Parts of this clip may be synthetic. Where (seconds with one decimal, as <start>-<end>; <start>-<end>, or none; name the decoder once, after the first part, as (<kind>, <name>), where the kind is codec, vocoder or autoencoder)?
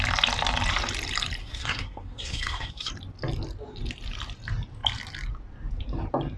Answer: 1.4-2.9 (codec, SNAC)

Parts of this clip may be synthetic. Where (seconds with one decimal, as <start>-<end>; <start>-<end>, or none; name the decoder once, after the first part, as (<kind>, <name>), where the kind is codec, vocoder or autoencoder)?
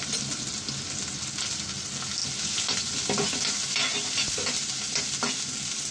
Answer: none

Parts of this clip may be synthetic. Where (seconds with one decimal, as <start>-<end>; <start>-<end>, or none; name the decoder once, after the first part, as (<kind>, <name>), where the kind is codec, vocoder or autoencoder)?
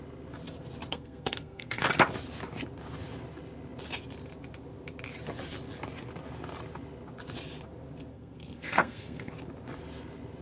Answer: 0.9-1.8 (codec, SNAC); 8.1-9.3